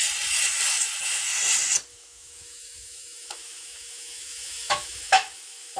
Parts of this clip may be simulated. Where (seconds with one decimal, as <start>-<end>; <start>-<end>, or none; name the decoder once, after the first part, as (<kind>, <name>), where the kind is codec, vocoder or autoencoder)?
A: 1.9-5.8 (autoencoder, DAC-VAE)